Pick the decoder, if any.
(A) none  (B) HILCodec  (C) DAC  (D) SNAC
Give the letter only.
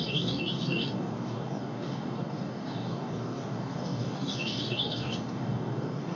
C